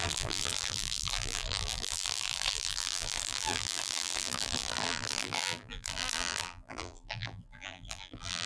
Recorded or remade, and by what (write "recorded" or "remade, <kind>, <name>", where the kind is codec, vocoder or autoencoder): remade, vocoder, BigVGAN v2